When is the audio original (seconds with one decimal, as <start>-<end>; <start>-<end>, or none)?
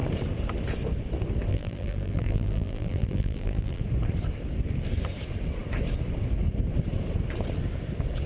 0.0-1.5; 3.8-8.3